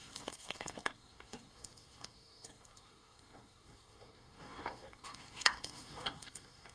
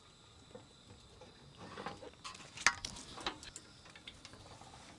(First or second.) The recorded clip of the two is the second